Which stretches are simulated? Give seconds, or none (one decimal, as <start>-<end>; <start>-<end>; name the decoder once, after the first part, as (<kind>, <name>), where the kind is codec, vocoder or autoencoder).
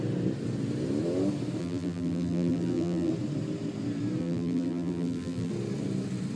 1.6-3.1 (vocoder, BigVGAN v2); 4.2-5.5